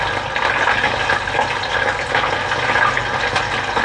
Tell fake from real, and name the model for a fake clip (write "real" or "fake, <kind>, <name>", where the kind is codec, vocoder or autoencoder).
real